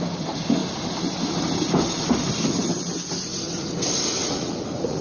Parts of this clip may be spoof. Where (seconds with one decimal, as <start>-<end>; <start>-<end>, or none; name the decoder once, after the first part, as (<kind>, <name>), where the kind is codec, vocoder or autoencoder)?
4.2-5.0 (vocoder, Vocos)